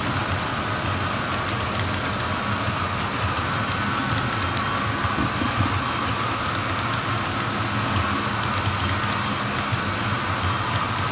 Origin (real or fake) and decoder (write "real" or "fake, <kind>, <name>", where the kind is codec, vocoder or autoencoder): real